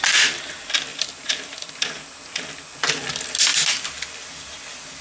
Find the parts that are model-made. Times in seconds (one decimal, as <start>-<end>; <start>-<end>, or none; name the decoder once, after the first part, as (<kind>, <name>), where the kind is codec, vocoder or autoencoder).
0.9-1.7 (vocoder, BigVGAN v2)